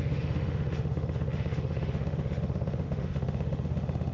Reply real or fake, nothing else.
fake